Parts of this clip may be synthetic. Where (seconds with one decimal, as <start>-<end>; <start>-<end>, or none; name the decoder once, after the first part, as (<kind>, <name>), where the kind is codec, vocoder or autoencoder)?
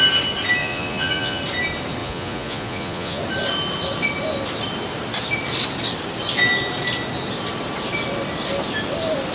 0.6-1.4 (vocoder, Vocos); 2.0-3.2